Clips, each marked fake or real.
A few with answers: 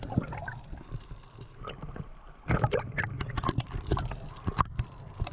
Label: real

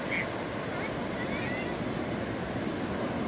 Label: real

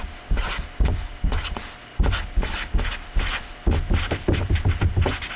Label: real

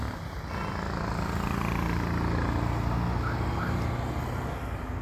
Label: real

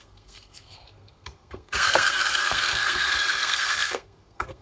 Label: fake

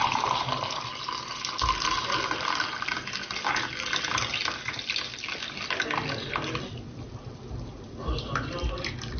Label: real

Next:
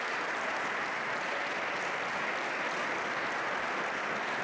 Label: real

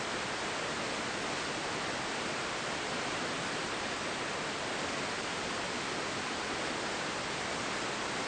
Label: real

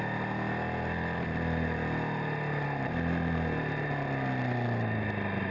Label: real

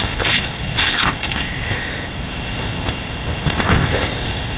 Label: fake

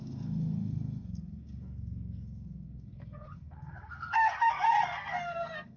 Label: fake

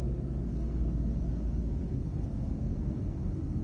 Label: fake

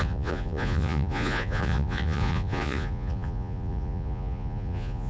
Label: fake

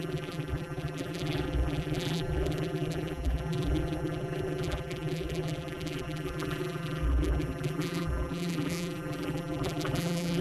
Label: fake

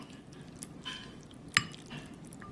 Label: real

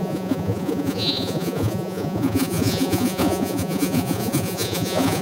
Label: fake